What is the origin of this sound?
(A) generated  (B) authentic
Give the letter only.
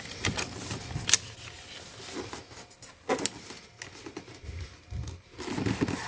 B